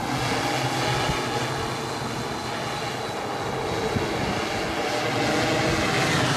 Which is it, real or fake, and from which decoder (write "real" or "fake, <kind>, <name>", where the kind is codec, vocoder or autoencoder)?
real